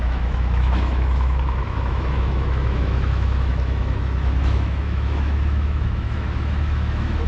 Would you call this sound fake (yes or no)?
yes